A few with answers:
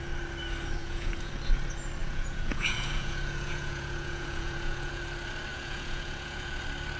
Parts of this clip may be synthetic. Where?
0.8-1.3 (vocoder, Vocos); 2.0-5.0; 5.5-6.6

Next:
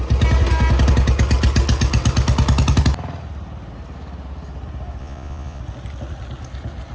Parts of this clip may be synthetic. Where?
5.0-5.6 (vocoder, Vocos)

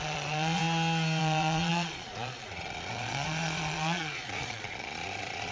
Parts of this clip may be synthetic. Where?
0.0-0.6 (vocoder, Vocos); 1.2-5.5

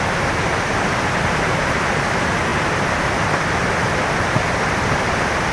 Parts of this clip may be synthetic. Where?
none

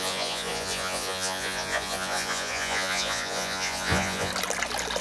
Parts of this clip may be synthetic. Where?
0.0-4.3 (vocoder, Vocos)